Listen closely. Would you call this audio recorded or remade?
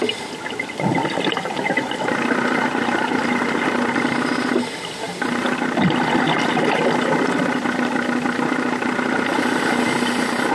recorded